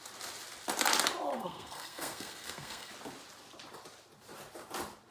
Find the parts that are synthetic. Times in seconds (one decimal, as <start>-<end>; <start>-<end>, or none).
1.3-2.9